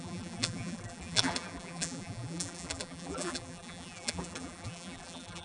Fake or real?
fake